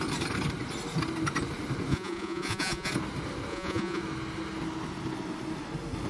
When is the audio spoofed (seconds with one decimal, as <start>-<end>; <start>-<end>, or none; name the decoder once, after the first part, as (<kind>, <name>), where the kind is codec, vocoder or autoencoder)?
1.9-2.9 (vocoder, Vocos); 3.5-4.0